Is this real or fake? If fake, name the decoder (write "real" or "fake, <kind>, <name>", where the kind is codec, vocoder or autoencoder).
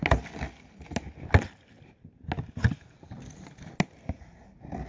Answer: real